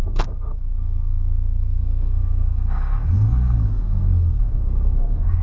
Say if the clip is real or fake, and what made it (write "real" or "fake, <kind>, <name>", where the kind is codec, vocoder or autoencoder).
fake, codec, SNAC